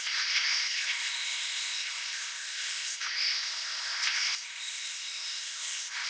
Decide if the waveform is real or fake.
fake